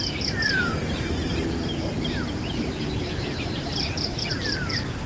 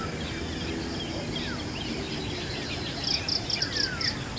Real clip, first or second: second